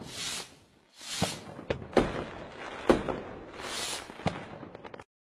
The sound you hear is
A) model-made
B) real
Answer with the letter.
B